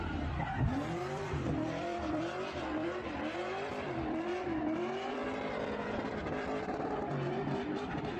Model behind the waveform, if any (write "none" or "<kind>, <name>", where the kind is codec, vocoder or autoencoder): vocoder, BigVGAN v2